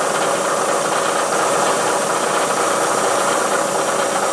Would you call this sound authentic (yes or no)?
yes